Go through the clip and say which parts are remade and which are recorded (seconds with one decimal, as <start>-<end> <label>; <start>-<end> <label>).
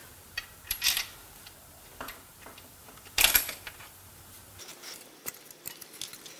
0.0-4.7 remade; 4.7-6.4 recorded